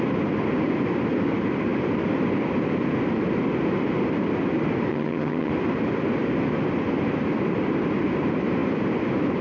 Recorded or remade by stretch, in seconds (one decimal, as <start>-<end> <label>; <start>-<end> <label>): 0.0-4.9 recorded; 4.9-5.5 remade; 5.5-9.4 recorded